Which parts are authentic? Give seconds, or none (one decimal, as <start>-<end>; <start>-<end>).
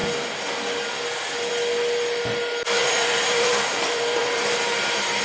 0.0-2.8